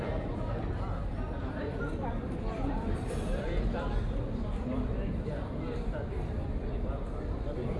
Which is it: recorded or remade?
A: remade